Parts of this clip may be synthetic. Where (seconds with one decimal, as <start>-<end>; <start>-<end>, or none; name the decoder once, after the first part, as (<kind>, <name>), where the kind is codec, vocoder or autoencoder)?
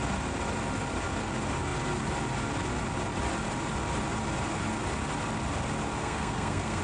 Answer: 6.0-6.8 (codec, SNAC)